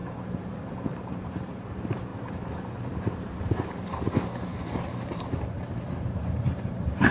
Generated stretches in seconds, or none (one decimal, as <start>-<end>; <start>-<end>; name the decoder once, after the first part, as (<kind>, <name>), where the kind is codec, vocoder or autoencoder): 0.0-7.1 (vocoder, BigVGAN v2)